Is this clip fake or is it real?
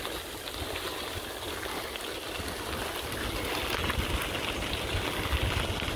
real